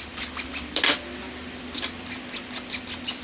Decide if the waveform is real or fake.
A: real